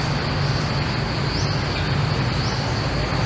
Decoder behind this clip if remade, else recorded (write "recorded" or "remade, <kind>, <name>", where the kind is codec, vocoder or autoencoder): recorded